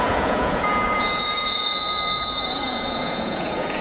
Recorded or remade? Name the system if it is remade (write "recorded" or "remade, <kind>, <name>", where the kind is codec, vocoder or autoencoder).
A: remade, vocoder, Vocos